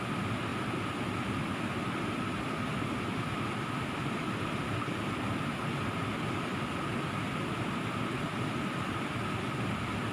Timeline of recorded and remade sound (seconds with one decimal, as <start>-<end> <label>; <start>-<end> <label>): 0.0-10.1 recorded